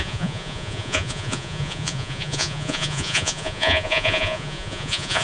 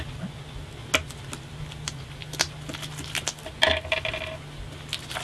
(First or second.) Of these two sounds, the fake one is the first